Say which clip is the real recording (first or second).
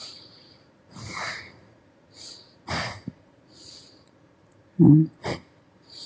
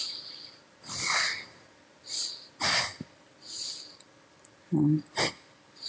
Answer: second